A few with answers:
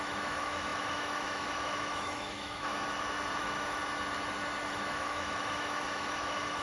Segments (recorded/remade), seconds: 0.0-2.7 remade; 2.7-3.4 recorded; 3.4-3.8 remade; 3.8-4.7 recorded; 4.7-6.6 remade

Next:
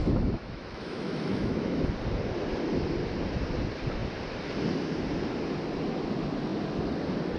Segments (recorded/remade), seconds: 0.0-1.8 remade; 1.8-7.4 recorded